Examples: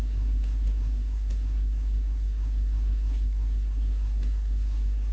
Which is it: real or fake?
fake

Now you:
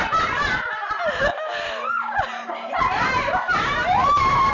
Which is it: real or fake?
real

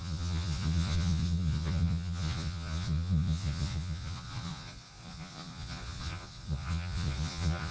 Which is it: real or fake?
fake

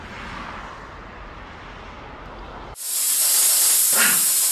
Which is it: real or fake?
real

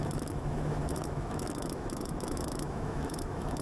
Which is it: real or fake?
fake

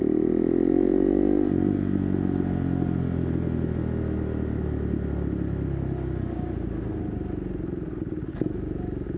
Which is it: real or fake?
real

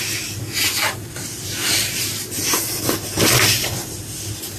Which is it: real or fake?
real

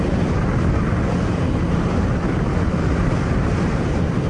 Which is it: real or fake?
real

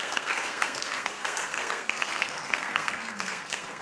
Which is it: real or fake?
fake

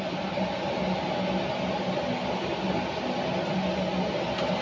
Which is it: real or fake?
real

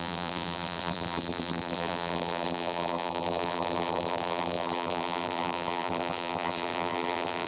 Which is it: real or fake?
fake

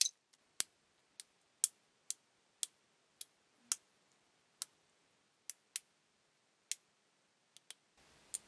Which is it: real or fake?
real